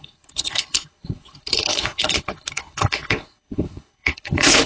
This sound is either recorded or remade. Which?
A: remade